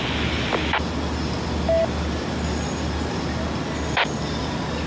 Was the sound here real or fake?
real